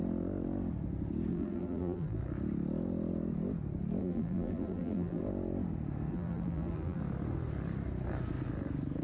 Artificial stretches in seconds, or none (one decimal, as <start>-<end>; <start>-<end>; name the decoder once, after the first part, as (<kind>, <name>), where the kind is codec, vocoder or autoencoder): 1.3-2.2 (vocoder, BigVGAN v2); 4.0-5.2; 6.1-7.0